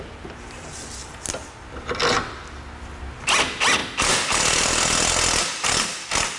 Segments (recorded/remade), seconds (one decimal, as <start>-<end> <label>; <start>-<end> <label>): 0.0-6.4 recorded